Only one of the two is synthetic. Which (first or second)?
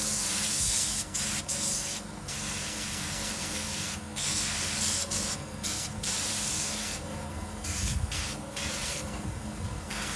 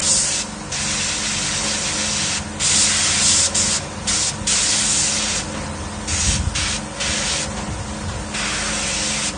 first